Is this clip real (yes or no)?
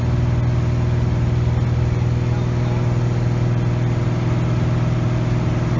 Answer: yes